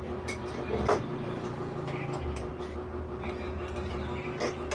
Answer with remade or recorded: recorded